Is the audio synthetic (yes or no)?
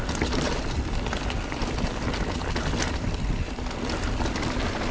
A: no